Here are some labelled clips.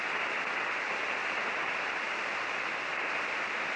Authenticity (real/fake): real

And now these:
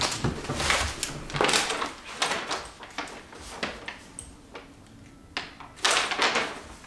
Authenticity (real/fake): real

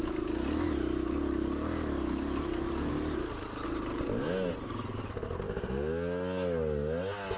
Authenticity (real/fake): real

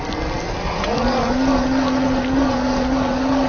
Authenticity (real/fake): real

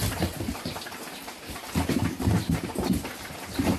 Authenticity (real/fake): real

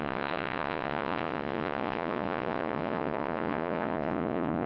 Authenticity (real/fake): fake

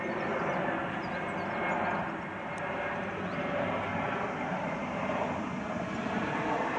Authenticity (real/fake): real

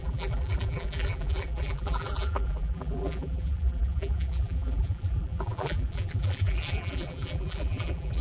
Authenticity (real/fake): fake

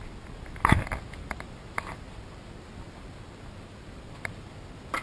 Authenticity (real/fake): real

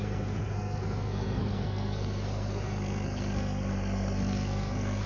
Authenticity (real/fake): fake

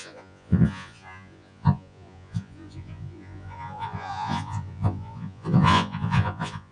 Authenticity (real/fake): fake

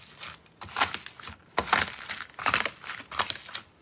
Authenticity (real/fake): real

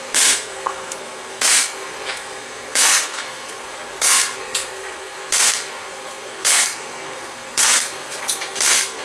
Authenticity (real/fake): fake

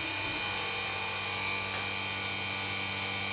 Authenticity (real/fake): real